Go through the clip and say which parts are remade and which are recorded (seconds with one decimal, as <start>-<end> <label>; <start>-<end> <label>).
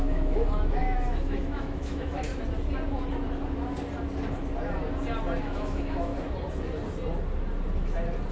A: 0.0-2.3 remade; 2.3-5.4 recorded; 5.4-6.1 remade; 6.1-8.3 recorded